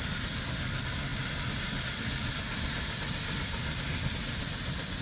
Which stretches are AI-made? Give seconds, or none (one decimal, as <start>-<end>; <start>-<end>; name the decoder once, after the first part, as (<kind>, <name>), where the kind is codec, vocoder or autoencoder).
none